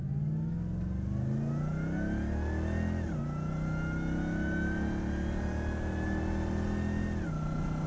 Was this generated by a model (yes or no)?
no